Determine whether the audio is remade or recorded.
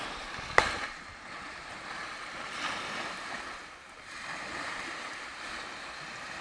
recorded